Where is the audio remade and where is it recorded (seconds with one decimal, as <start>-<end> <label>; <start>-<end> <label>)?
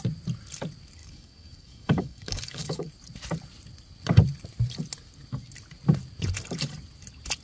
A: 0.0-1.0 recorded; 1.0-2.9 remade; 2.9-7.4 recorded